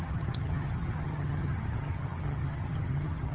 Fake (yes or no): yes